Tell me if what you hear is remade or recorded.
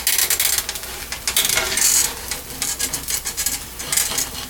recorded